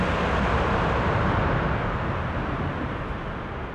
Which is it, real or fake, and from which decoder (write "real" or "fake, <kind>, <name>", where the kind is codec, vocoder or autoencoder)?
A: real